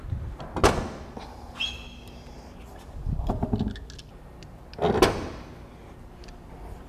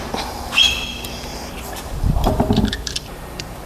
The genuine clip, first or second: first